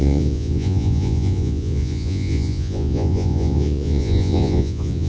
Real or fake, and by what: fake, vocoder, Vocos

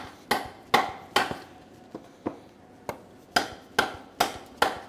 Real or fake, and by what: real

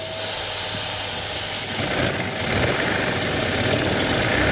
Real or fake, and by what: real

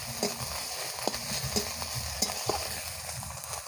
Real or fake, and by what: real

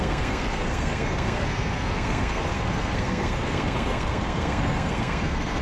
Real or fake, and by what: fake, codec, SNAC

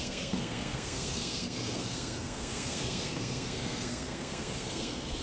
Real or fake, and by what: fake, codec, SNAC